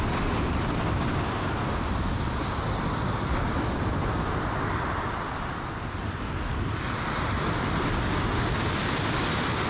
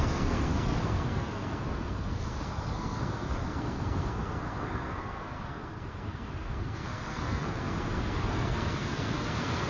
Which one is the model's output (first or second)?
second